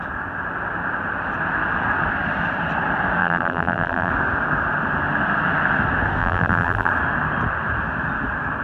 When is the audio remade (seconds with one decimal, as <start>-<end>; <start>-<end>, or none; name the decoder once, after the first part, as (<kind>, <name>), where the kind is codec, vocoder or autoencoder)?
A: 3.2-4.1 (vocoder, BigVGAN v2); 6.2-6.9